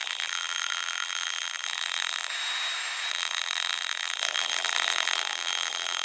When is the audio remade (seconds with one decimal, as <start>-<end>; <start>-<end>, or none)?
0.0-2.3; 3.1-6.0